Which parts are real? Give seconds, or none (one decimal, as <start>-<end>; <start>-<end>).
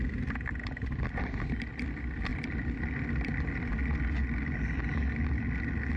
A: 0.0-2.3; 3.7-4.2; 5.2-6.0